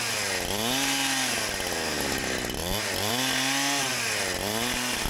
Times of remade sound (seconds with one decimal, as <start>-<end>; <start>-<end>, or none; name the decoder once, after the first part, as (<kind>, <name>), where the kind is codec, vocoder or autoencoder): none